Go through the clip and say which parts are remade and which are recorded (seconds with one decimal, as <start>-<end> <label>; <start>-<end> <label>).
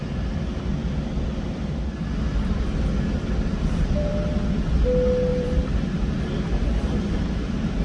0.0-3.5 recorded; 3.5-4.1 remade; 4.1-5.3 recorded; 5.3-7.8 remade